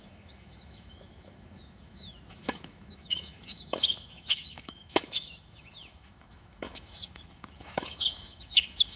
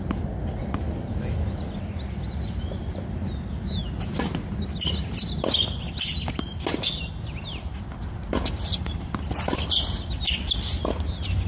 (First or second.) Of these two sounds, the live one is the second